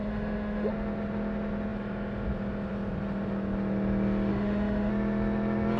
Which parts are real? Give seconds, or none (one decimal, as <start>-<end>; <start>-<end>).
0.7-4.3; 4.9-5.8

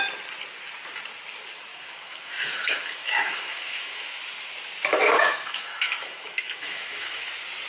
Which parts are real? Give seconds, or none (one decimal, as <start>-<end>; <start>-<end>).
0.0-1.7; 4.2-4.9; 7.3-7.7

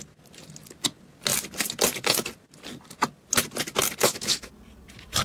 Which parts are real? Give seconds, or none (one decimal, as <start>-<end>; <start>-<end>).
0.0-4.0; 4.5-5.2

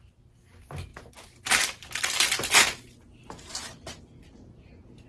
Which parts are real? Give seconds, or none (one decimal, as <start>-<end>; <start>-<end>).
0.0-5.1

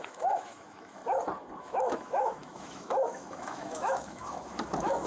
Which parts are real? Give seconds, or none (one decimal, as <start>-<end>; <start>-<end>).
1.0-1.6